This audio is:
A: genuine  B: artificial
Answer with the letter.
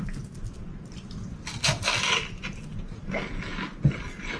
A